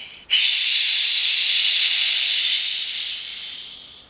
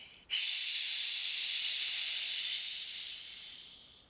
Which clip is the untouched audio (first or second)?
first